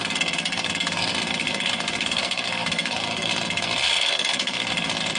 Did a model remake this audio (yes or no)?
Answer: yes